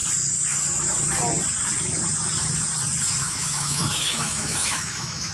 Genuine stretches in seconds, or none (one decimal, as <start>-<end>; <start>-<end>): 0.0-3.2